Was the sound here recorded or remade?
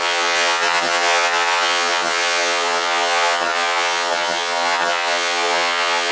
remade